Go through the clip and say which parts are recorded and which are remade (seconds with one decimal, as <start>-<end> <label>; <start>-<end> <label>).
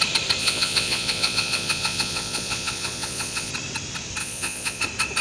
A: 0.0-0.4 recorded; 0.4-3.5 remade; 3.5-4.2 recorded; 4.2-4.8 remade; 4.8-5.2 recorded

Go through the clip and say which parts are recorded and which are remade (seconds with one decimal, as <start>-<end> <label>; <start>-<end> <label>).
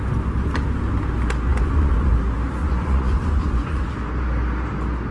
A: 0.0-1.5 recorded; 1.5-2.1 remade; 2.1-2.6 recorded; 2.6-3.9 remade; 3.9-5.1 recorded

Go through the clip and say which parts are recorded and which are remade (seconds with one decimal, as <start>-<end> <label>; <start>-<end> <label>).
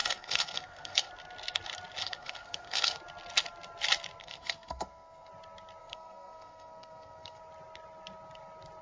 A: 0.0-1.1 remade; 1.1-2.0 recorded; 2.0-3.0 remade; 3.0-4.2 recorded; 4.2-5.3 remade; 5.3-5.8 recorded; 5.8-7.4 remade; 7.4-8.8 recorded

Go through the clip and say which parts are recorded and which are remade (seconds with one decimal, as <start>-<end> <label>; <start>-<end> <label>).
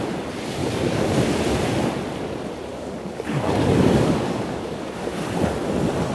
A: 0.0-0.6 recorded; 0.6-1.2 remade; 1.2-2.7 recorded; 2.7-5.2 remade; 5.2-6.1 recorded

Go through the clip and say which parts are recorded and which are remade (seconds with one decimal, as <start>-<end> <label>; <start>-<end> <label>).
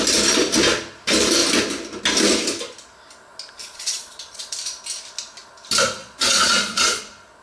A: 0.0-3.6 recorded; 3.6-4.5 remade; 4.5-6.0 recorded; 6.0-7.0 remade; 7.0-7.4 recorded